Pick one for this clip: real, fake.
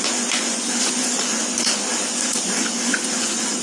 fake